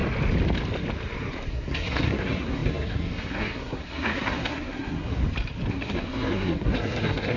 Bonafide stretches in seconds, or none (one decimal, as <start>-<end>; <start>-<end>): 0.0-1.5; 5.2-5.7